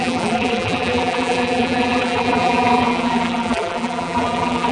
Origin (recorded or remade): remade